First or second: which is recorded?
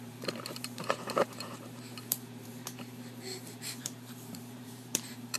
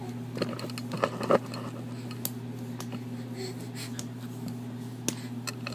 second